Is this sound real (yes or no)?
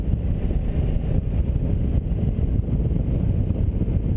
yes